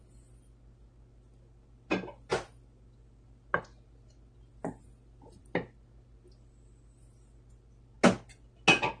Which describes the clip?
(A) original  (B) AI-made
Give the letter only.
A